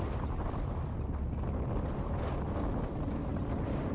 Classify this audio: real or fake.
real